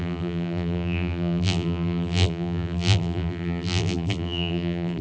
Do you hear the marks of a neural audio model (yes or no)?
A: yes